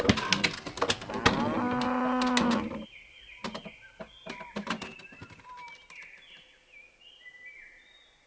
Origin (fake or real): real